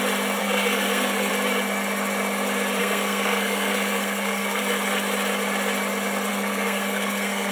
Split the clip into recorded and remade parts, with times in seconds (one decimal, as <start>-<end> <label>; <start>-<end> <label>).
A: 0.0-0.4 recorded; 0.4-1.3 remade; 1.3-2.8 recorded; 2.8-4.6 remade; 4.6-6.3 recorded; 6.3-7.5 remade